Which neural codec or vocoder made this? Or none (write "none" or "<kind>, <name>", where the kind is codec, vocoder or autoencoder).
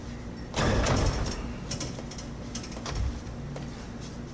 none